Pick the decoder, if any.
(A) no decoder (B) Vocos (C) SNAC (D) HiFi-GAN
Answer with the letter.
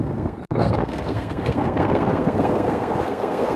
C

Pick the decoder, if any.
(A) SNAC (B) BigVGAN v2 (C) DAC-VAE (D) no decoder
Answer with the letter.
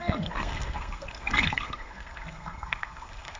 A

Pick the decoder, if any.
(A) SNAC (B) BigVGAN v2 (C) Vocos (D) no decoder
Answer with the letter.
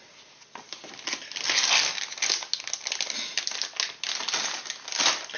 D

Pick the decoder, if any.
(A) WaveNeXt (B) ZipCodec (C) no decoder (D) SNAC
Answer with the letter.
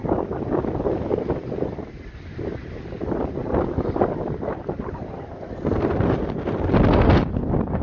C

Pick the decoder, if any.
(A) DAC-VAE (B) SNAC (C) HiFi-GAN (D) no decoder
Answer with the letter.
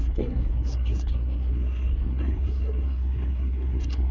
B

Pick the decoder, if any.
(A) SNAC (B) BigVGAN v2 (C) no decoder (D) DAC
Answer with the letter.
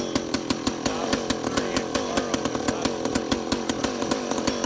C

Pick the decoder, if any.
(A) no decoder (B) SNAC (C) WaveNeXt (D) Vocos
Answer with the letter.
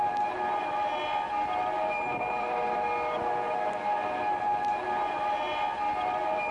A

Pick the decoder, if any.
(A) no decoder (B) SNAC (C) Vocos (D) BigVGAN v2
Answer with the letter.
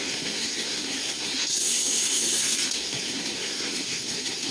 B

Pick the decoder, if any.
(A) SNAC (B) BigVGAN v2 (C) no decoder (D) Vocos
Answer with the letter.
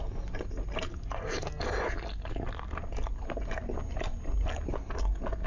C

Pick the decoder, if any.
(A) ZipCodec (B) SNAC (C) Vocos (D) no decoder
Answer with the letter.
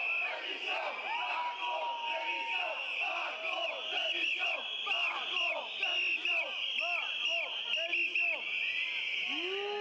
D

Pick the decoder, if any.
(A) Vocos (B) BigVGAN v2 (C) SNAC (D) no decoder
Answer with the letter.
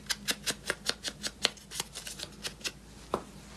D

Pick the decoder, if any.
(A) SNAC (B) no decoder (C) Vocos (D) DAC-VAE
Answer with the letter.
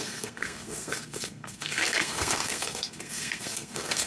A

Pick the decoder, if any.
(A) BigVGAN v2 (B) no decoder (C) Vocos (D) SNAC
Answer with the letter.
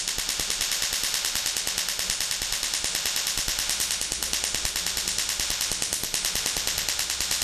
B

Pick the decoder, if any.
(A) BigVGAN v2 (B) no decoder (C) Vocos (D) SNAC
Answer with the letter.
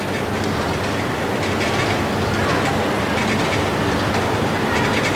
B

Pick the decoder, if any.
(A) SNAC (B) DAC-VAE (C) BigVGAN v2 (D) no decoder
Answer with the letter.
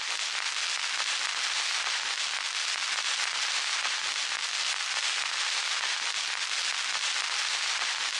D